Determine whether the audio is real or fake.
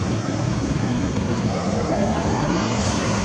fake